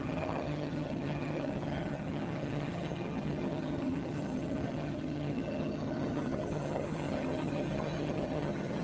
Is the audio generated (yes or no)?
yes